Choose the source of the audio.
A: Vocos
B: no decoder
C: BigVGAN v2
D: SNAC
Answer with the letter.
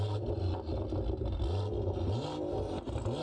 B